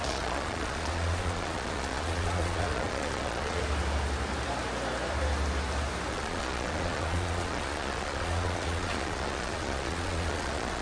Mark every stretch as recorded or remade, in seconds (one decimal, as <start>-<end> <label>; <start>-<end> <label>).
0.0-3.6 remade; 3.6-6.1 recorded; 6.1-10.8 remade